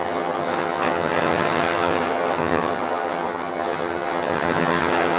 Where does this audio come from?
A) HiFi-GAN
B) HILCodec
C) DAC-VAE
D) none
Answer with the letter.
A